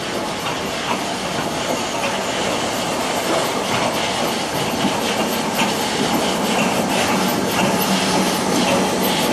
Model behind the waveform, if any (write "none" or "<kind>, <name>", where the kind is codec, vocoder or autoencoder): none